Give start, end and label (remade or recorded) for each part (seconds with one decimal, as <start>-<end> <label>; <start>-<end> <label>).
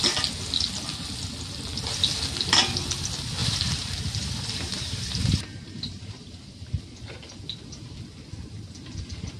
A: 0.0-3.4 recorded; 3.4-6.8 remade; 6.8-9.4 recorded